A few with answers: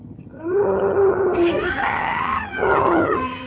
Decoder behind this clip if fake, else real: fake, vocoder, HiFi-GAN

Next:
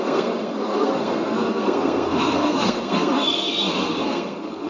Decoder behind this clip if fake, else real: fake, codec, SNAC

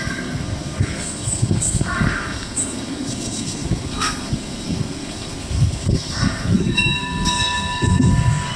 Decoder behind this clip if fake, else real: fake, codec, SNAC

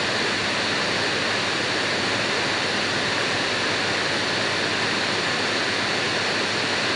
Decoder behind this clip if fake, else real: real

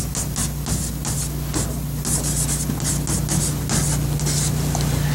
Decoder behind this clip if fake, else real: real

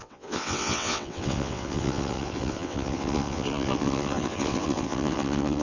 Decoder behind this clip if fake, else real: fake, vocoder, WaveNeXt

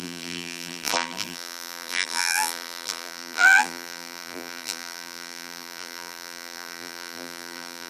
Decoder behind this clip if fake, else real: fake, vocoder, BigVGAN v2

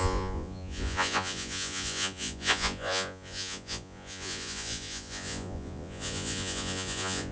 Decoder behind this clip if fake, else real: fake, vocoder, Vocos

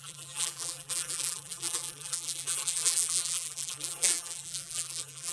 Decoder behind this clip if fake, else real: fake, vocoder, BigVGAN v2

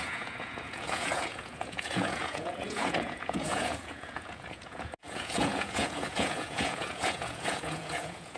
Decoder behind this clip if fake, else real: fake, vocoder, Vocos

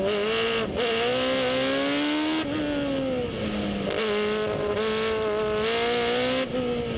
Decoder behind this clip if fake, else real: real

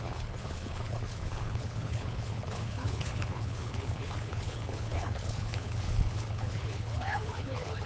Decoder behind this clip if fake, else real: fake, codec, HILCodec